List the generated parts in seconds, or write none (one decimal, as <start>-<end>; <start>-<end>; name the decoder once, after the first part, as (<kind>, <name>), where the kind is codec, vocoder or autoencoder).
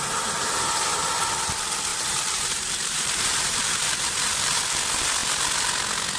1.9-4.6 (vocoder, BigVGAN v2)